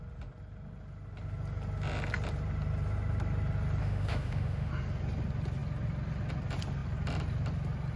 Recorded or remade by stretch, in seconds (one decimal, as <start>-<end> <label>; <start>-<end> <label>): 0.0-3.8 recorded; 3.8-4.7 remade; 4.7-8.0 recorded